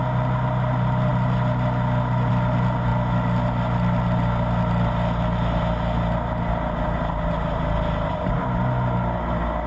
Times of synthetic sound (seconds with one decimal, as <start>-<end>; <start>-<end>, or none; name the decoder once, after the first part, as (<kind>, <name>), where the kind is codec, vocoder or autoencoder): none